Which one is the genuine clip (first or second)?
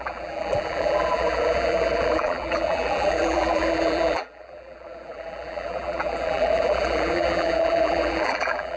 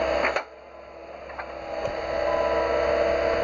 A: second